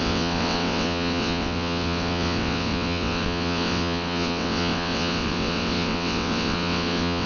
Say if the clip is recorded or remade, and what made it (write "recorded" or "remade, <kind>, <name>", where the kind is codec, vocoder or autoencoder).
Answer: remade, vocoder, WaveNeXt